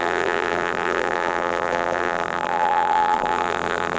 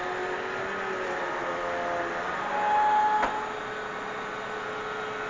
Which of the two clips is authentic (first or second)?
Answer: second